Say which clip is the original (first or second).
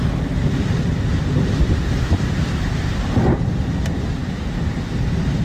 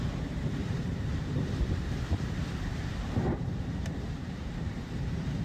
first